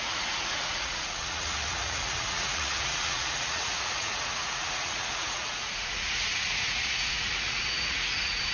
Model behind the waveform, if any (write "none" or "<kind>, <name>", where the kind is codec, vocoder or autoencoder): vocoder, Vocos